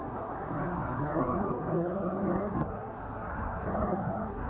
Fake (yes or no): yes